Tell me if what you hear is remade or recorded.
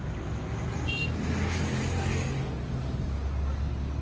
recorded